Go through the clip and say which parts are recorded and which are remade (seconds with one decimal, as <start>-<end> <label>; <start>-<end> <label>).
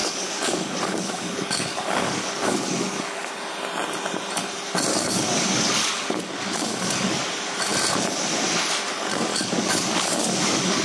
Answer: 0.0-3.3 remade; 3.3-4.9 recorded; 4.9-7.2 remade; 7.2-9.3 recorded; 9.3-10.8 remade